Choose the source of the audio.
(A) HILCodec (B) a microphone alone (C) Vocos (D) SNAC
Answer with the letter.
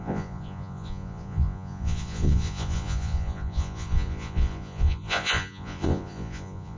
C